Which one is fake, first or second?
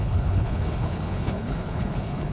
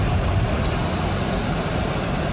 first